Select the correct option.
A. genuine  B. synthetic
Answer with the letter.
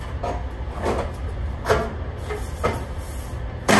A